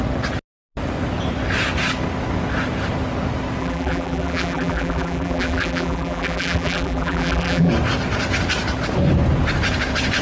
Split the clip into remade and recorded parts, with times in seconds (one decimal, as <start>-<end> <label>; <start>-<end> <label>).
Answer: 0.0-3.6 recorded; 3.6-7.7 remade; 7.7-10.2 recorded